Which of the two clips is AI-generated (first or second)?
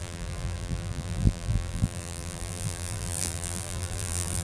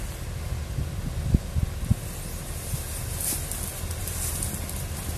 first